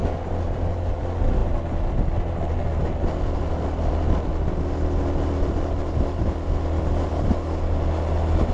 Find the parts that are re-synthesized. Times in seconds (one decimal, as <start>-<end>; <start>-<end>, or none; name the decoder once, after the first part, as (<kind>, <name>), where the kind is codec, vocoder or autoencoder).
none